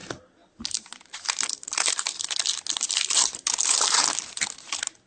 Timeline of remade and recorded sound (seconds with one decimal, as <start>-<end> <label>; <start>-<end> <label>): 0.0-5.1 recorded